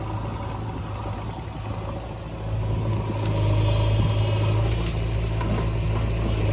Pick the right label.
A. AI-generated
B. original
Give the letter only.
B